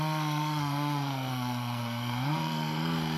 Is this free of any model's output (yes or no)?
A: no